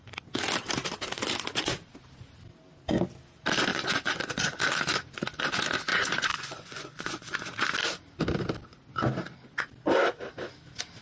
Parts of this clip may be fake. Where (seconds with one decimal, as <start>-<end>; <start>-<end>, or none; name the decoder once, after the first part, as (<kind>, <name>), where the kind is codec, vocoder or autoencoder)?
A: 3.7-4.6 (vocoder, Vocos); 5.9-7.5